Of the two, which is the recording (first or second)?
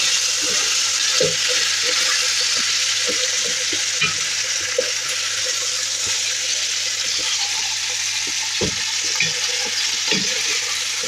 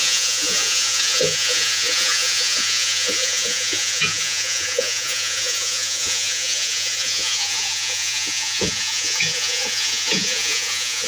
first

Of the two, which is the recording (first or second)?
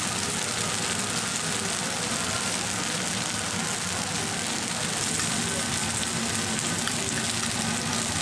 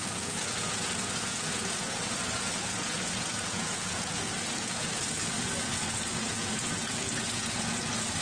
first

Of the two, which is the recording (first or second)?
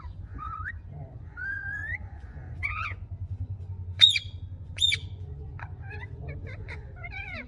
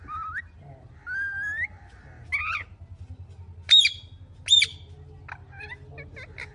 second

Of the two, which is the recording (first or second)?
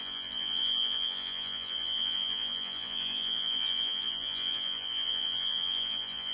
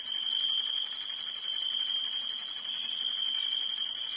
second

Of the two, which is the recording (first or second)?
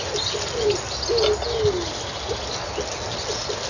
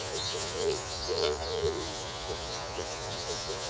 first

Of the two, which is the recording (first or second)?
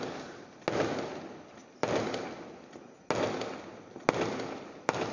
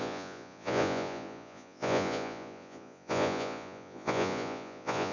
first